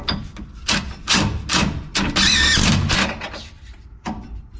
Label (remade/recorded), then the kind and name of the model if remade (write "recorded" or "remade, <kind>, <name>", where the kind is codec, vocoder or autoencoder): recorded